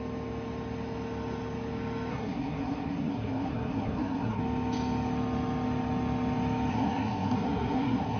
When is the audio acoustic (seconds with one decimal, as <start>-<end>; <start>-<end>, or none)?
0.0-2.1; 4.4-6.7